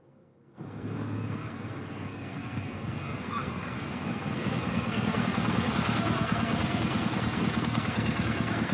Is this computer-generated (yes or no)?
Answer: yes